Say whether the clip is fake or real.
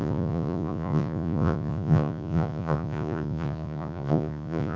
fake